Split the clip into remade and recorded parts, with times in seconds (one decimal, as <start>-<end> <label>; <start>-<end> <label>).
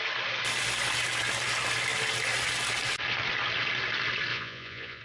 0.0-4.3 recorded; 4.3-5.0 remade